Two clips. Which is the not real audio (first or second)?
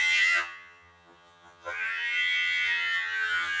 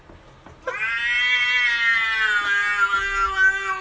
first